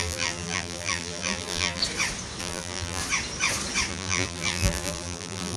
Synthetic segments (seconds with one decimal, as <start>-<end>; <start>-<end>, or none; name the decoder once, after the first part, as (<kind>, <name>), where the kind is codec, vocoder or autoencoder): 0.0-1.8 (vocoder, BigVGAN v2); 2.4-3.0; 3.9-5.6